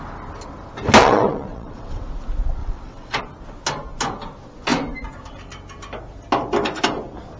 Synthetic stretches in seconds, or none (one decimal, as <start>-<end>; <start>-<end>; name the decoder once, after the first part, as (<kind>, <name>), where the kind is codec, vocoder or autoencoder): 1.0-2.0 (vocoder, WaveNeXt); 2.6-3.2